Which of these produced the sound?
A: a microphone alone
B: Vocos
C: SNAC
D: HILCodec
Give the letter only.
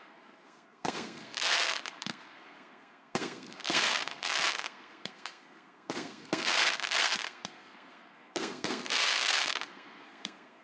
C